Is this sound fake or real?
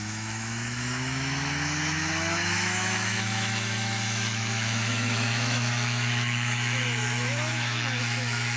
fake